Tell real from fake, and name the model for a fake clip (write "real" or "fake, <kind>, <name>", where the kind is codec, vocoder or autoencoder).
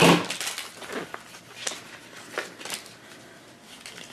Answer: real